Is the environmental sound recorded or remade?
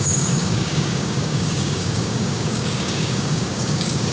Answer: remade